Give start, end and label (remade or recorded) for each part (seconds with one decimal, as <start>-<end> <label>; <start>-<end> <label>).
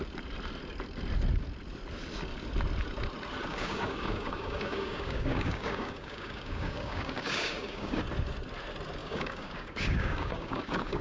0.0-3.5 recorded; 3.5-8.0 remade; 8.0-9.0 recorded; 9.0-11.0 remade